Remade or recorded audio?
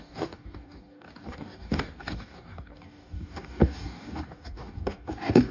remade